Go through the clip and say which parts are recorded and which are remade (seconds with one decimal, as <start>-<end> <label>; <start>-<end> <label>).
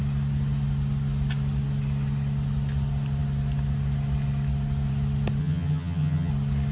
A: 0.0-5.4 recorded; 5.4-6.3 remade; 6.3-6.7 recorded